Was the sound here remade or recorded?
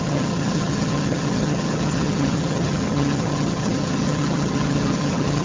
remade